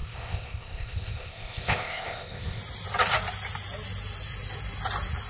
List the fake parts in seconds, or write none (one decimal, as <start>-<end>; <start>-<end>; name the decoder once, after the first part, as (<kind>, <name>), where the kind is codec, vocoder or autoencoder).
0.0-2.6 (codec, ZipCodec)